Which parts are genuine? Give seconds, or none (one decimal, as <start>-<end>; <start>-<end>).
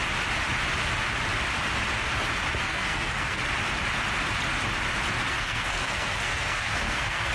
0.0-2.6; 3.4-5.3